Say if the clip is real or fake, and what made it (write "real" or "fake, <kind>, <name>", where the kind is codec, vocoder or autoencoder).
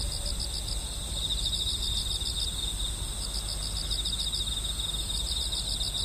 real